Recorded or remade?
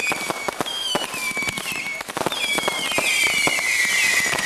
remade